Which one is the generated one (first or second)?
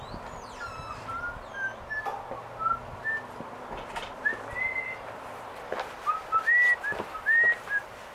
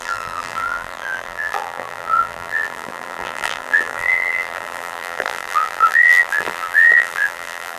second